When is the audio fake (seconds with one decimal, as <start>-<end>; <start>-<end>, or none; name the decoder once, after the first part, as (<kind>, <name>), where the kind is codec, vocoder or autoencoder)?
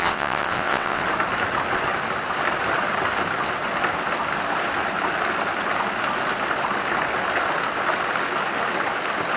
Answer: 0.0-1.0 (vocoder, WaveNeXt)